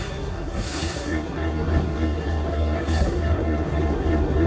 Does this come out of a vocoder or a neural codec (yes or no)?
yes